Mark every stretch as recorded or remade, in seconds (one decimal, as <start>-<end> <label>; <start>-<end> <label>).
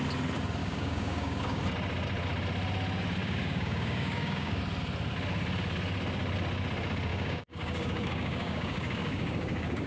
0.0-0.6 recorded; 0.6-1.6 remade; 1.6-3.2 recorded; 3.2-4.6 remade; 4.6-7.1 recorded; 7.1-9.9 remade